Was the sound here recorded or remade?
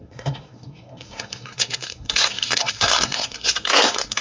remade